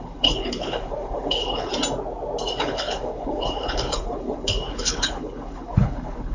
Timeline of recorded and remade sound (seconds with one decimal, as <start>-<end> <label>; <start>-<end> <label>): 0.0-1.7 remade; 1.7-2.6 recorded; 2.6-6.3 remade